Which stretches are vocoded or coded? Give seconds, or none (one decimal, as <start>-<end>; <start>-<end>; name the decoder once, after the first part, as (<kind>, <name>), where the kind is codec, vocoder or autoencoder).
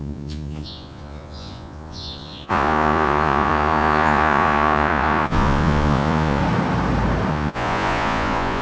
0.0-6.4 (vocoder, Vocos); 7.3-8.6